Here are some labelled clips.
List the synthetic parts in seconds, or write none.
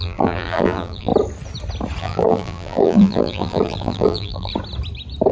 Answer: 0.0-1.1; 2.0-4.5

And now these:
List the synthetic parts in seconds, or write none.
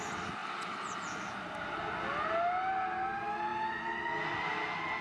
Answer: none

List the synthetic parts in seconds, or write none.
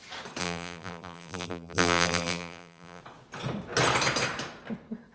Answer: 0.4-3.0